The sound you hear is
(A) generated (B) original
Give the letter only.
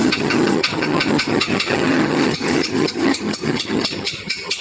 A